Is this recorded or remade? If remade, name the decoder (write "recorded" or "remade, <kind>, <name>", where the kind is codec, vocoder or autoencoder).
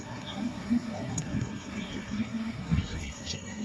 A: remade, codec, SNAC